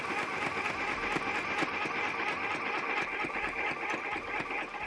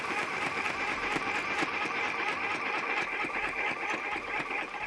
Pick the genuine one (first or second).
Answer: first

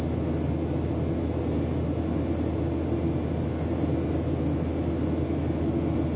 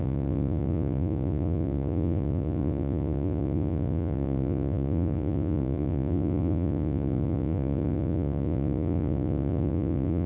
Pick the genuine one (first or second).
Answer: first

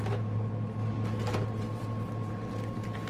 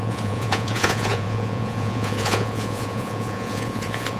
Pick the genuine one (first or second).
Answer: first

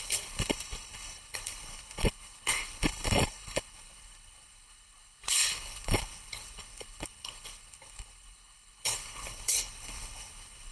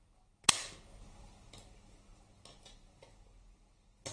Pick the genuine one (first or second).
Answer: second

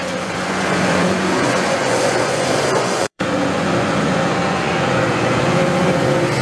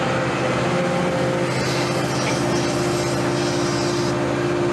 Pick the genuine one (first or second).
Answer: second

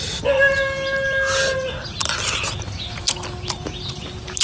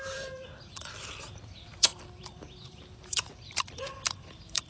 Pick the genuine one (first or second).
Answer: first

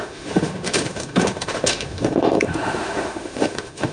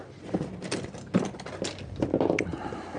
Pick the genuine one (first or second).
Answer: second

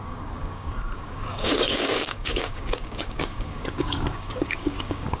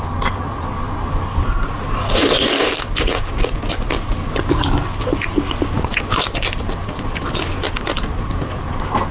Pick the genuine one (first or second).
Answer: second